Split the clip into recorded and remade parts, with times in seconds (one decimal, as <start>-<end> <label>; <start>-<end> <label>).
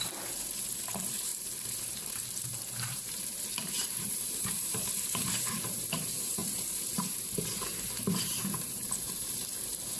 0.0-10.0 remade